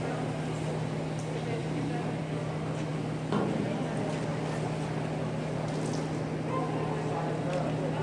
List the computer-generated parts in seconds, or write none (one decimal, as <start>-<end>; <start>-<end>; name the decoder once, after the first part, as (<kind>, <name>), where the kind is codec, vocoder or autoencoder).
1.6-2.3 (vocoder, BigVGAN v2)